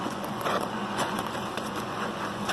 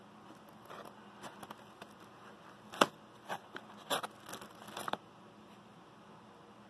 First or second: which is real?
second